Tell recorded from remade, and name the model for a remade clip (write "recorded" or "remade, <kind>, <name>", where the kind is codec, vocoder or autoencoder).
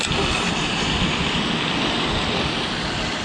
recorded